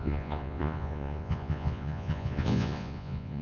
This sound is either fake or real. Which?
fake